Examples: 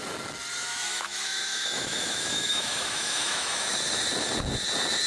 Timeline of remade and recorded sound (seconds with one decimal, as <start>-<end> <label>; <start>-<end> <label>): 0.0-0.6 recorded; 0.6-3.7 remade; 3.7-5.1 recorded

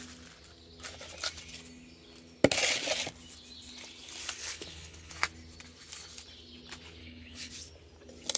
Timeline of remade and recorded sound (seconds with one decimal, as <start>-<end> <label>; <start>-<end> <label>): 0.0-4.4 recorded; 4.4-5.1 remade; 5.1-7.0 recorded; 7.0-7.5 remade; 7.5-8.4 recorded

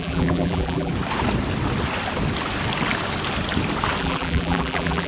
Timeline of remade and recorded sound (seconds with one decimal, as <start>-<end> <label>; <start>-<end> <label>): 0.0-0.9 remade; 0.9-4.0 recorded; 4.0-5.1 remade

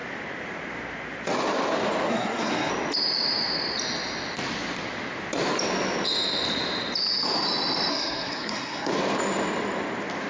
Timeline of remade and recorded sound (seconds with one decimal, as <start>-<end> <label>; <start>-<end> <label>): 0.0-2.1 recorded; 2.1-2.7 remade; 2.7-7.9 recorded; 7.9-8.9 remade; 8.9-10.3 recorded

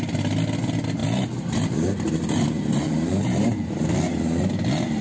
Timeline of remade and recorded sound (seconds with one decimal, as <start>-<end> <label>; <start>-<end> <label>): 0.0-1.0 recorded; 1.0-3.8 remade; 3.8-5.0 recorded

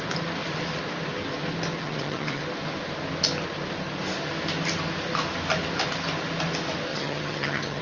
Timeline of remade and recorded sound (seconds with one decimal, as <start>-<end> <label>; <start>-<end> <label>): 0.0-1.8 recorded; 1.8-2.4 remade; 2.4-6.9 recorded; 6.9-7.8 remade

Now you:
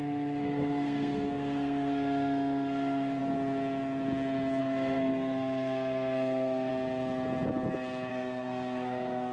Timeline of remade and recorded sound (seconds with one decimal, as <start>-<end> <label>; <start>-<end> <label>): 0.0-3.2 remade; 3.2-4.6 recorded; 4.6-6.7 remade; 6.7-8.1 recorded; 8.1-9.3 remade